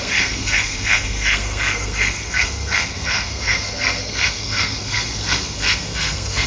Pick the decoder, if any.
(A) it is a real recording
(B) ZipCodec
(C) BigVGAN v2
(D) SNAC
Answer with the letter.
D